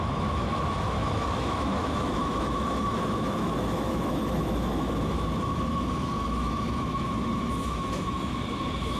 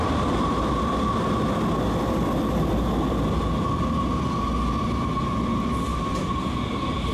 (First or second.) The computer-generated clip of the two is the first